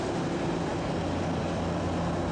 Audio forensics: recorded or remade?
recorded